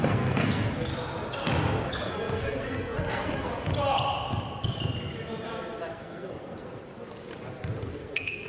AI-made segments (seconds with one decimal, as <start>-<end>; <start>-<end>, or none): 0.0-0.9; 1.9-3.5; 5.9-6.9; 7.8-8.5